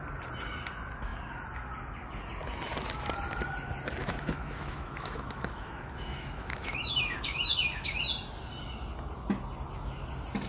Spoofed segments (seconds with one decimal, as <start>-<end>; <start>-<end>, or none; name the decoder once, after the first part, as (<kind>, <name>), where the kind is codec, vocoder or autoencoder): 4.0-8.0 (autoencoder, DAC-VAE)